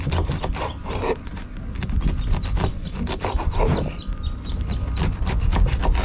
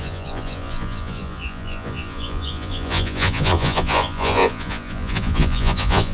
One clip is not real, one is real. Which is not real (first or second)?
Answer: second